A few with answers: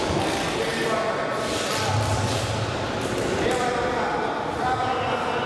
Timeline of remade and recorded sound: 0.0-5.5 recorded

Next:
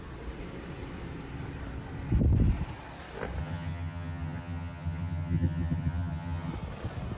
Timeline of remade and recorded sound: 0.0-3.4 recorded; 3.4-6.5 remade; 6.5-7.2 recorded

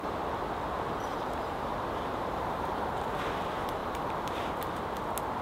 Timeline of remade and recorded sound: 0.0-1.1 recorded; 1.1-3.2 remade; 3.2-3.8 recorded; 3.8-4.5 remade; 4.5-5.4 recorded

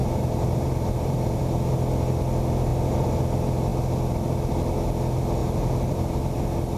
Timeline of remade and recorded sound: 0.0-1.4 remade; 1.4-5.4 recorded; 5.4-6.2 remade; 6.2-6.8 recorded

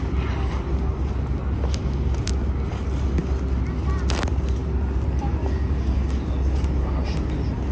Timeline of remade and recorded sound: 0.0-7.7 recorded